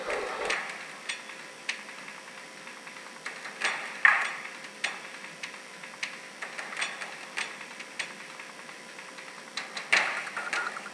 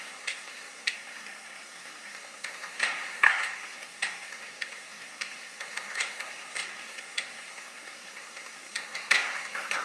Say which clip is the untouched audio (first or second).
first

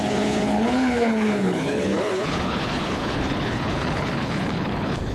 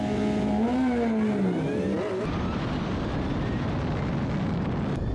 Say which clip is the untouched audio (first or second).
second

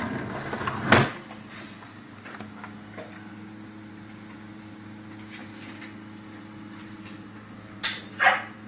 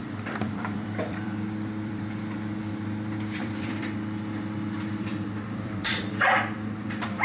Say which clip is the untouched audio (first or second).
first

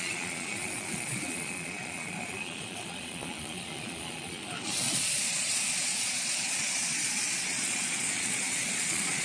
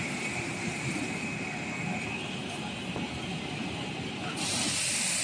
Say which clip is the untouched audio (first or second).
second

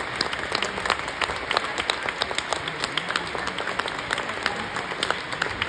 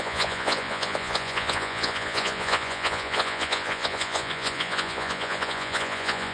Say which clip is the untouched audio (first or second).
first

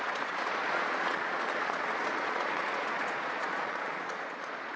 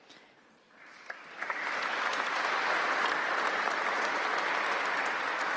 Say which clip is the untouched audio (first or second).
second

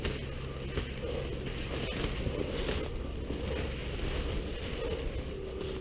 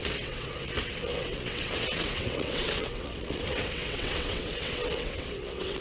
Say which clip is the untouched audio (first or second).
first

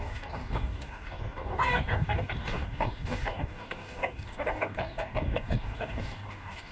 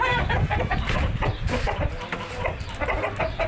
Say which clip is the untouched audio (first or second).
second